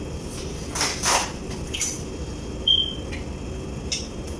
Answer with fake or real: real